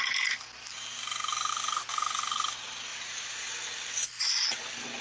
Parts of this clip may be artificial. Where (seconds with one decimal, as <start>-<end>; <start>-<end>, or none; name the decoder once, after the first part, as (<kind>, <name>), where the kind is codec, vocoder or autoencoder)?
2.9-3.5 (vocoder, Vocos)